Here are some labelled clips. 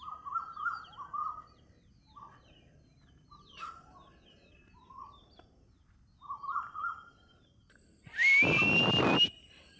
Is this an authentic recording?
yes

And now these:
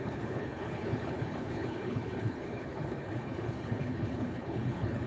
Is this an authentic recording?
no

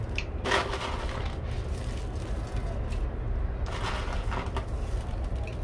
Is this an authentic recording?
yes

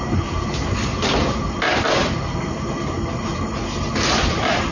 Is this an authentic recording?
yes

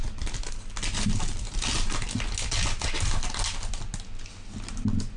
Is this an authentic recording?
yes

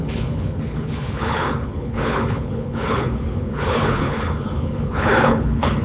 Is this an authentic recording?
no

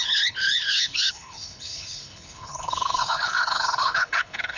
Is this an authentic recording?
no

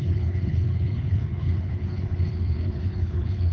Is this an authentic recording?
no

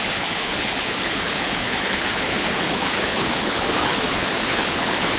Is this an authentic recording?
no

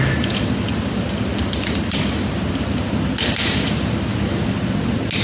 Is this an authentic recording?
yes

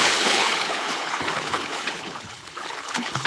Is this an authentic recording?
no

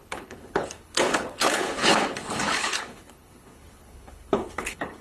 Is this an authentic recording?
no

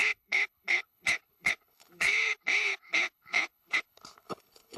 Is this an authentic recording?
no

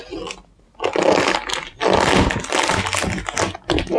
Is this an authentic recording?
yes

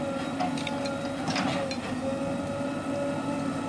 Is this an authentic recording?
yes